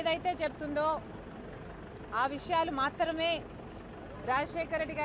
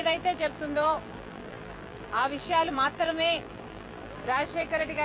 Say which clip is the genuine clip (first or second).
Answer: first